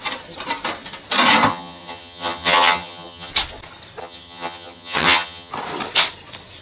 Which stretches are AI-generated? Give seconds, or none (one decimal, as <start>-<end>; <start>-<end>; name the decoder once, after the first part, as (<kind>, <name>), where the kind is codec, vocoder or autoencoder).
1.5-3.3 (vocoder, HiFi-GAN); 4.0-5.5